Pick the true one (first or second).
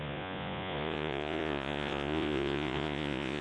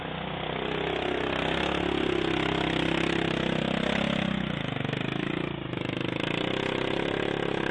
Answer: second